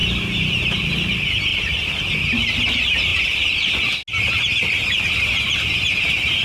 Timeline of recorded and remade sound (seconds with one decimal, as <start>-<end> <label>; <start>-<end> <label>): 0.0-0.5 remade; 0.5-1.5 recorded; 1.5-2.1 remade; 2.1-6.4 recorded